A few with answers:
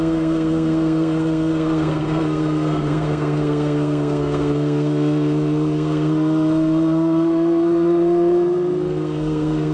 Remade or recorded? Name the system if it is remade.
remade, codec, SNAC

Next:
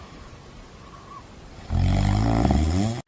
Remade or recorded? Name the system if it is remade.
recorded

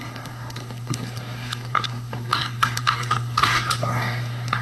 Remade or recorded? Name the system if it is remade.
remade, codec, SNAC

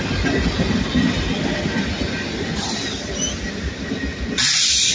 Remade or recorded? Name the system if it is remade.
recorded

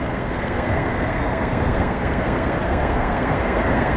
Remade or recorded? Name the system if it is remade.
remade, codec, SNAC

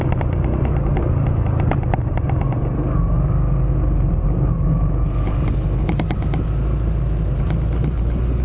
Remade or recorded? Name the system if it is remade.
recorded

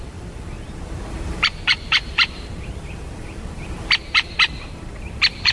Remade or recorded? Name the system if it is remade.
remade, vocoder, BigVGAN v2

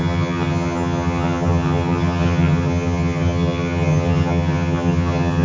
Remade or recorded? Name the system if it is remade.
remade, vocoder, HiFi-GAN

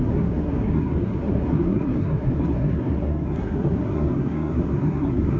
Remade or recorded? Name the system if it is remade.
remade, codec, SNAC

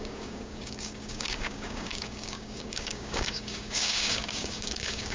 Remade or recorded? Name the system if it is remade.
remade, codec, DAC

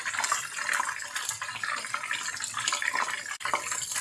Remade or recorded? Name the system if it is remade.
recorded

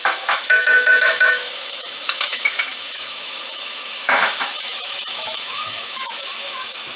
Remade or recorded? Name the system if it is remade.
remade, autoencoder, DAC-VAE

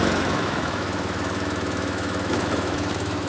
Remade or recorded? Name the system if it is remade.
remade, autoencoder, DAC-VAE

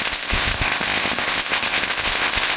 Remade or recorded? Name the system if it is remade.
remade, codec, ZipCodec